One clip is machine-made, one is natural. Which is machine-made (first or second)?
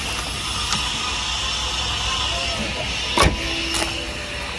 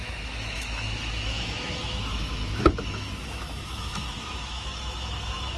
second